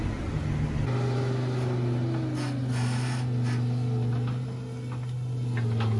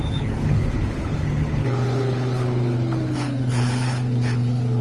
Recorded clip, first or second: first